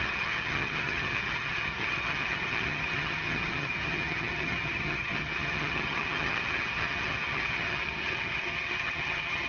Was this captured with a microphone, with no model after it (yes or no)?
no